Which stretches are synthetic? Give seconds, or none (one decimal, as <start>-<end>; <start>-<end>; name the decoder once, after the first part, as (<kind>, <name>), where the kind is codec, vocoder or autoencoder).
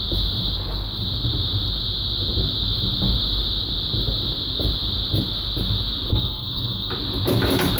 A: 6.1-6.9 (codec, SNAC)